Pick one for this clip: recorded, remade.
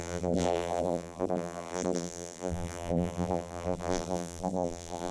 remade